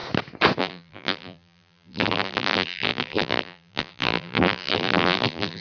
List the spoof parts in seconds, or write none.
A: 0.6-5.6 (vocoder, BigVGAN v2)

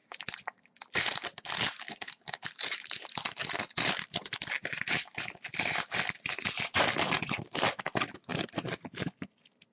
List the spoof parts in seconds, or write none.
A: 0.0-5.2 (vocoder, BigVGAN v2); 8.3-9.7